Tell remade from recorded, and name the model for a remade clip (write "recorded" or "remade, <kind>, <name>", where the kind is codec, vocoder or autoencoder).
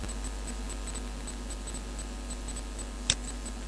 recorded